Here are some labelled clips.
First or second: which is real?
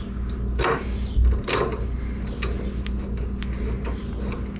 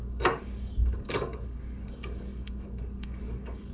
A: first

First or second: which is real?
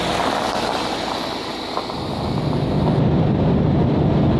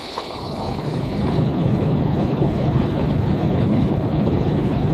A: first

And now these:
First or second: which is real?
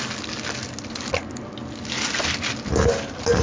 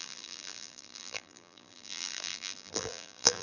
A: first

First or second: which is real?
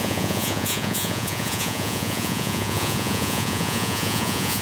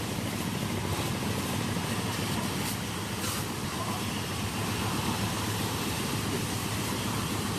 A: second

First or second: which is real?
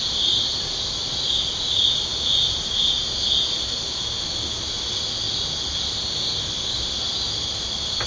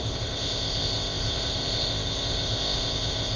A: first